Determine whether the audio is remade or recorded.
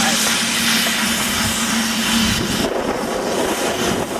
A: recorded